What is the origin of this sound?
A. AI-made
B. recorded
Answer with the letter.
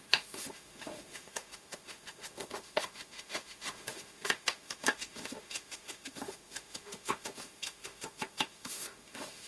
A